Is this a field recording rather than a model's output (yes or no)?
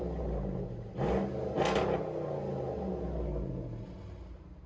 yes